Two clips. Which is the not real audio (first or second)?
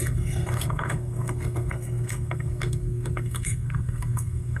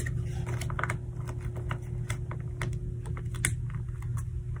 first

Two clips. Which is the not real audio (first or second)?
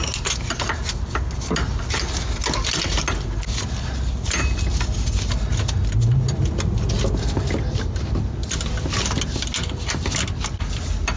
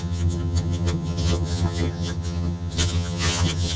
second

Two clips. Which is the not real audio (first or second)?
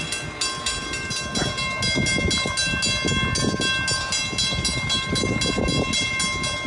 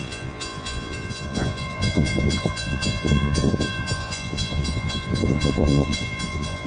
second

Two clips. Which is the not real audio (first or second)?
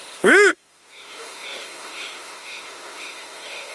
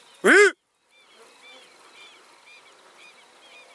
first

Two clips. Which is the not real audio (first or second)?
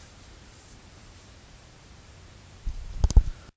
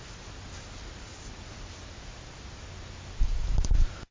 first